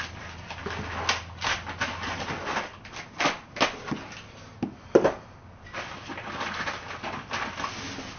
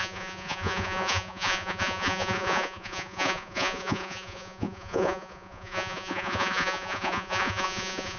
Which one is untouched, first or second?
first